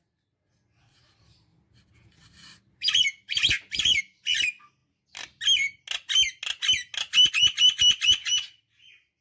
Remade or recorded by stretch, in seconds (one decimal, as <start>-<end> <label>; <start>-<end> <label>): 0.0-9.2 recorded